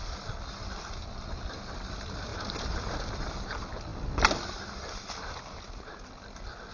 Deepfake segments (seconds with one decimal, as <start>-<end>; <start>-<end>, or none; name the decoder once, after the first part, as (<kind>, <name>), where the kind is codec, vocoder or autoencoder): none